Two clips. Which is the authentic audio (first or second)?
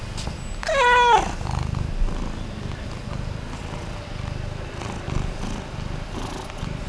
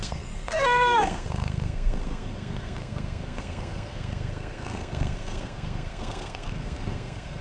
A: first